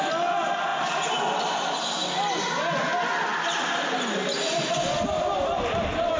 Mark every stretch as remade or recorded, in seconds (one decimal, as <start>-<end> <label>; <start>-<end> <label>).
0.0-6.2 recorded